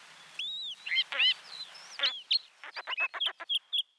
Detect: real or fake real